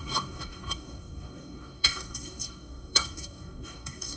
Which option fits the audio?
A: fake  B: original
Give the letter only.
A